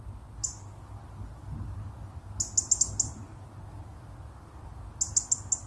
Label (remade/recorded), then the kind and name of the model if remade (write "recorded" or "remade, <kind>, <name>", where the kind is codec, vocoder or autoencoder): recorded